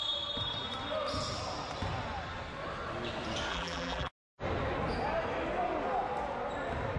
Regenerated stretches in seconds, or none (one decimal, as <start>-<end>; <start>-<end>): 3.5-4.1